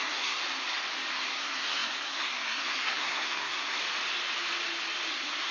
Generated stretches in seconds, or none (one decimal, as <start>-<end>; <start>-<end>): 0.0-0.4; 1.1-3.8; 5.1-5.5